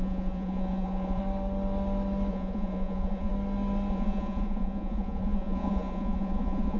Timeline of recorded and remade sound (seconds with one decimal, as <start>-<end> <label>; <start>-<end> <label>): 0.0-1.2 remade; 1.2-2.3 recorded; 2.3-3.3 remade; 3.3-3.9 recorded; 3.9-6.8 remade